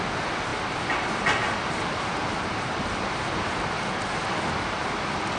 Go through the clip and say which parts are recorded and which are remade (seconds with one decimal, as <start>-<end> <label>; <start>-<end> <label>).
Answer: 0.0-0.5 recorded; 0.5-3.7 remade; 3.7-5.4 recorded